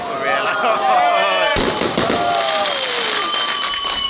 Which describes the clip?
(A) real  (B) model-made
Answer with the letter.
A